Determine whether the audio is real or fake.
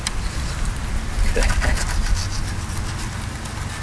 real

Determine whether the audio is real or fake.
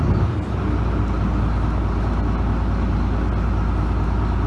real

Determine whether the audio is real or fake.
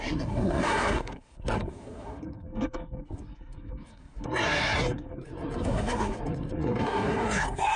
fake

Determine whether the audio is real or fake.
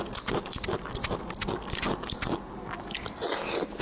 real